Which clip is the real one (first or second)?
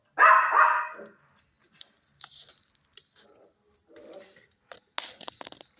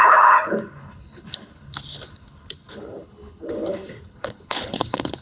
first